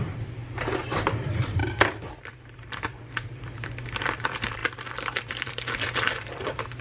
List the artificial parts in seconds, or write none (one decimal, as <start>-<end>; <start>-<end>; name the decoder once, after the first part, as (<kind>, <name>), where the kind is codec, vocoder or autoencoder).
0.0-1.6 (vocoder, BigVGAN v2); 2.2-4.6; 5.2-6.8